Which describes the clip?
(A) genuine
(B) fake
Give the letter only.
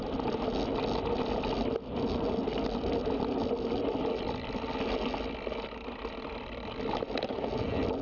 A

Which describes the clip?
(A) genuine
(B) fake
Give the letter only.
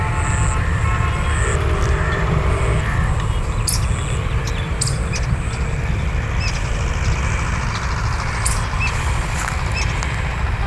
A